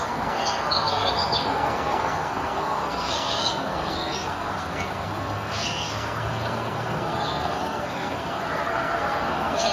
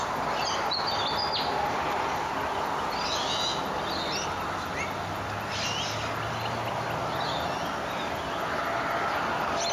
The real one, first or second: second